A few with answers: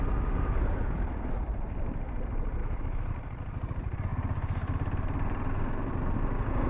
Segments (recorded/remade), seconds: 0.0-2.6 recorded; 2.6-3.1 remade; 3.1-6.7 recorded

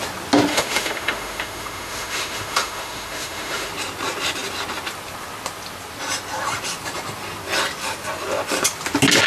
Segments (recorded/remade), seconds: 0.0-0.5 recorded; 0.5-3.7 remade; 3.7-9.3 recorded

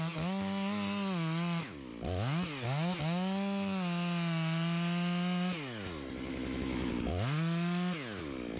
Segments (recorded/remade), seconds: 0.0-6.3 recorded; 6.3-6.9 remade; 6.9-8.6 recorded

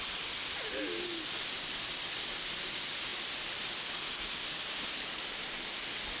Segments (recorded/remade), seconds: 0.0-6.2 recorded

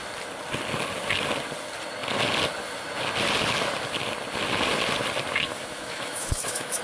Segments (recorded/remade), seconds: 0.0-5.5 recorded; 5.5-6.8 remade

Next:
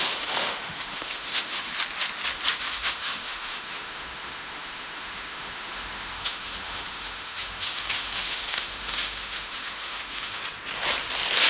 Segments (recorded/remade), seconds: 0.0-1.7 remade; 1.7-2.5 recorded; 2.5-10.4 remade; 10.4-11.5 recorded

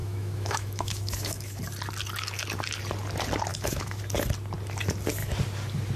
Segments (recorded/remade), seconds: 0.0-1.6 remade; 1.6-3.5 recorded; 3.5-4.0 remade; 4.0-6.0 recorded